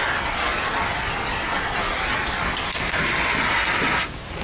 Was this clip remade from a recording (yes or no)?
no